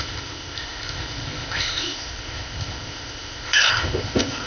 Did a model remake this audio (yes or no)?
yes